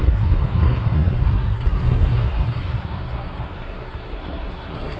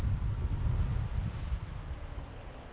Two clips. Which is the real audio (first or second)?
second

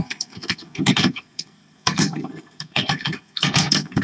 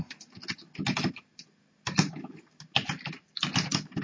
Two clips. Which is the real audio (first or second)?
second